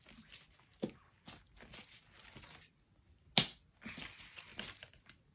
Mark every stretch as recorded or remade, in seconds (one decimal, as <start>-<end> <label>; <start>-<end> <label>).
0.0-4.5 recorded; 4.5-5.3 remade